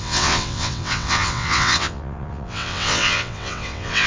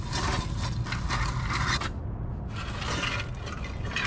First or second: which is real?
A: second